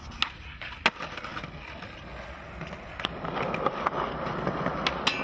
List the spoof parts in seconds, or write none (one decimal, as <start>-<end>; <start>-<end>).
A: none